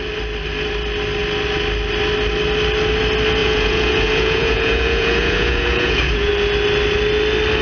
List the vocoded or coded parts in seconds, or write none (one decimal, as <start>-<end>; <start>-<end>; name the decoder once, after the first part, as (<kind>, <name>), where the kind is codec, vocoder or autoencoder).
3.4-6.3 (vocoder, Vocos)